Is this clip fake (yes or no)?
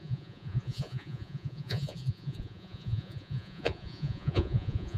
yes